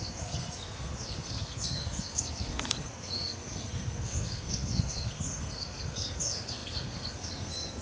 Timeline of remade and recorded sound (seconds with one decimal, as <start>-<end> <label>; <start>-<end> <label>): 0.0-7.8 remade